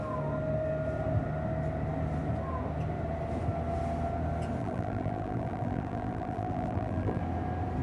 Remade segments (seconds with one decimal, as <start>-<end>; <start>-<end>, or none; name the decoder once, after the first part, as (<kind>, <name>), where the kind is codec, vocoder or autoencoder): 4.6-7.2 (vocoder, BigVGAN v2)